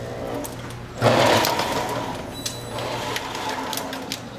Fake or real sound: real